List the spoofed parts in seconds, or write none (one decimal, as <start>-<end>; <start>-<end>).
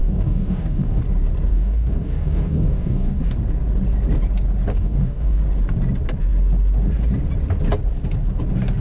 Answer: 0.0-1.0; 1.5-3.2; 4.7-5.4